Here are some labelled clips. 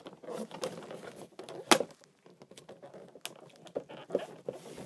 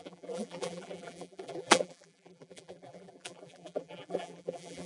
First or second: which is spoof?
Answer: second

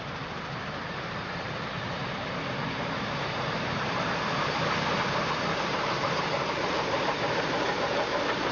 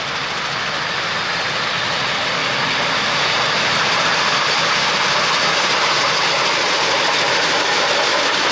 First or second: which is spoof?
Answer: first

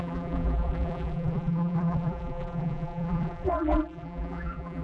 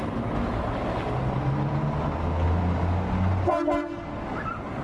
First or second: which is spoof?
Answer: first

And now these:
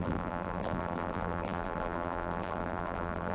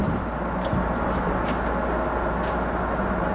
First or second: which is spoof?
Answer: first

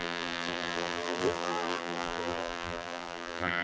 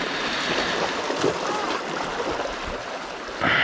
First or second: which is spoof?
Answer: first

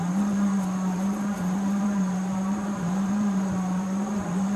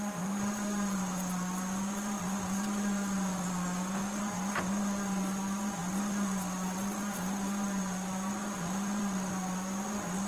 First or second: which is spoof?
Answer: first